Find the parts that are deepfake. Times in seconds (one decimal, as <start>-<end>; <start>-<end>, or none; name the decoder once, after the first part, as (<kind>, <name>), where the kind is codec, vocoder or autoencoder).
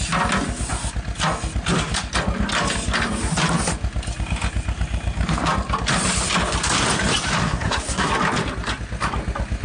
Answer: 7.4-8.1 (codec, SNAC)